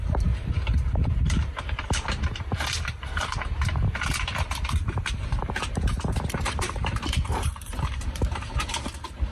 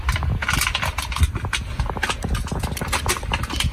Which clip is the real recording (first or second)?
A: second